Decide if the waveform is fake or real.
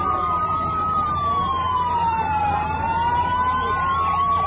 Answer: fake